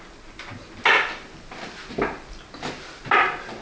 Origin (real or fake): real